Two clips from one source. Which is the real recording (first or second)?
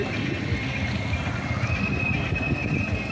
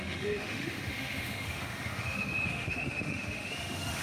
first